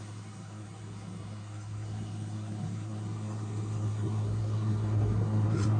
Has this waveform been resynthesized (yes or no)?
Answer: yes